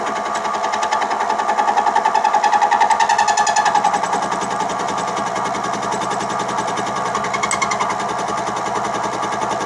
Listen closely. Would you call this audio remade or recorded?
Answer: recorded